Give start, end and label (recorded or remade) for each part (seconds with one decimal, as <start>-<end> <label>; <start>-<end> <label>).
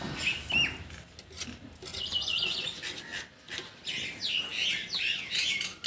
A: 0.0-1.9 recorded; 1.9-2.7 remade; 2.7-5.9 recorded